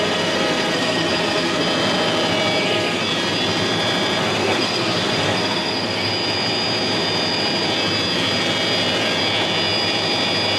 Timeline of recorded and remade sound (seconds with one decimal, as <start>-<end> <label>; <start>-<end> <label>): 0.0-1.6 remade; 1.6-2.6 recorded; 2.6-3.0 remade; 3.0-4.2 recorded; 4.2-6.1 remade; 6.1-10.6 recorded